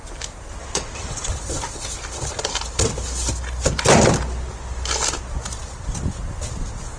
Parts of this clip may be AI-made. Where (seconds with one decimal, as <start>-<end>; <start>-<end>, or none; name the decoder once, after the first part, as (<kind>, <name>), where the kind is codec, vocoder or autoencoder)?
0.6-1.3 (vocoder, WaveNeXt)